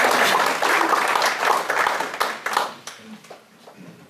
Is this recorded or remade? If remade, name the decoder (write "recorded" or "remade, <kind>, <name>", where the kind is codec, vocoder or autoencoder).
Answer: recorded